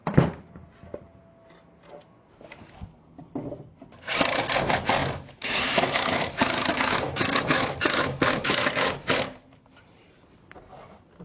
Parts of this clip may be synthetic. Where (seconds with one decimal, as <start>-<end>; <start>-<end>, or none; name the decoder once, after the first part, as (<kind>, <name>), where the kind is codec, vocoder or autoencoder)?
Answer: 5.0-8.9 (autoencoder, DAC-VAE)